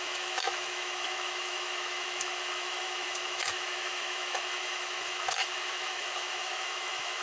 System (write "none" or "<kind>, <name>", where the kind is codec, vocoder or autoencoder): autoencoder, DAC-VAE